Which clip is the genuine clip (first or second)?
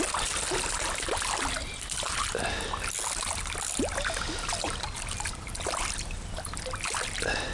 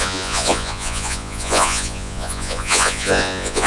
first